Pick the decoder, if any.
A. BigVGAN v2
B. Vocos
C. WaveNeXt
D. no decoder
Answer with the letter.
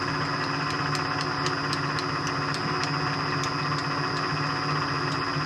D